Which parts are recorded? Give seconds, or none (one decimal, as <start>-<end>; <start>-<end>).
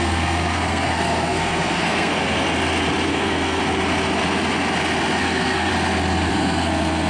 2.2-3.1; 3.6-5.2; 5.7-6.3